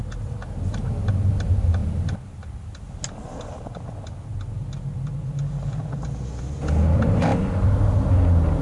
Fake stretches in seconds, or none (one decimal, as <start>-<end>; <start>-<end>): none